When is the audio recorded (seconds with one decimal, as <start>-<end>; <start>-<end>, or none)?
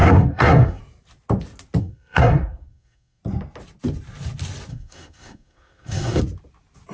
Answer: 0.8-1.8; 3.2-4.7; 6.2-6.9